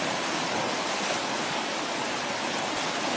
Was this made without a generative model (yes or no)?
yes